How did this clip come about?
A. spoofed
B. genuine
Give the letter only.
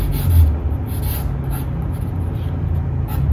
B